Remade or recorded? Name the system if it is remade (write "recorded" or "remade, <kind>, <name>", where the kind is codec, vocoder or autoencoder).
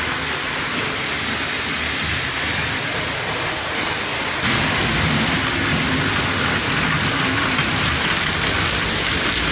recorded